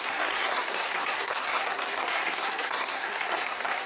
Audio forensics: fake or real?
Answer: fake